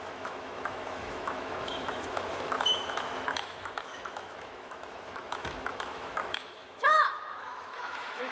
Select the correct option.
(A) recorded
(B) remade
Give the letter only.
B